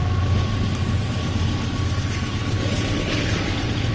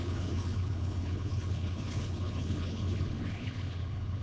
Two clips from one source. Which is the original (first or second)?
first